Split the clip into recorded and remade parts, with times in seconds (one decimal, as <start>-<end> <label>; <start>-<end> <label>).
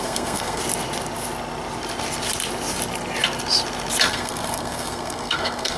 0.0-0.6 remade; 0.6-4.1 recorded; 4.1-5.8 remade